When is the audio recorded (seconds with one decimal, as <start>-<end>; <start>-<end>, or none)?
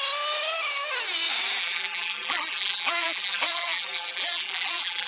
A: 0.0-1.6